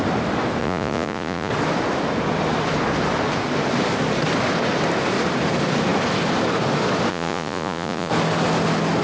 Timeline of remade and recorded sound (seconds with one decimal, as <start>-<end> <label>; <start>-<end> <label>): 0.0-0.6 recorded; 0.6-1.5 remade; 1.5-7.1 recorded; 7.1-8.1 remade; 8.1-9.0 recorded